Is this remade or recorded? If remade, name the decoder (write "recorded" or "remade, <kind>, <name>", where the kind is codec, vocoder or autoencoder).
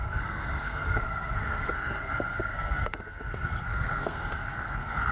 remade, codec, SNAC